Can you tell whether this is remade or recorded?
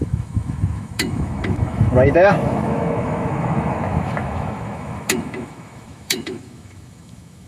remade